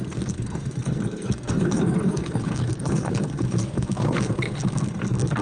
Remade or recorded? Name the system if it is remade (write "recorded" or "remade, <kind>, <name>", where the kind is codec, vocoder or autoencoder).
remade, codec, SNAC